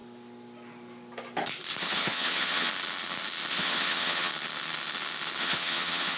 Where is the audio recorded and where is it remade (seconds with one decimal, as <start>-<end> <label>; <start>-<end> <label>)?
0.0-1.8 recorded; 1.8-2.7 remade; 2.7-3.5 recorded; 3.5-4.3 remade; 4.3-5.4 recorded; 5.4-6.2 remade